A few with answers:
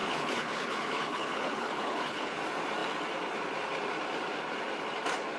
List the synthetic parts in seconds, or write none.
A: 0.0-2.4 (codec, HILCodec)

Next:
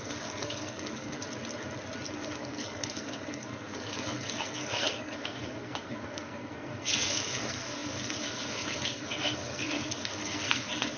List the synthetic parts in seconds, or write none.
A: 0.0-1.2 (codec, SNAC); 2.1-11.0

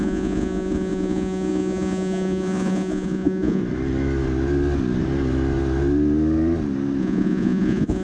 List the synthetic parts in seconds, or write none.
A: 0.0-3.6 (vocoder, Vocos); 7.0-8.0

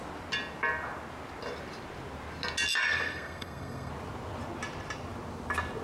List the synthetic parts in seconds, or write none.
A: 2.9-3.9 (codec, SNAC)

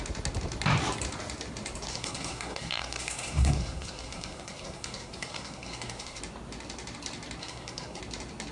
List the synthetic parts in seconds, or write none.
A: 1.9-6.2 (codec, SNAC); 7.4-8.0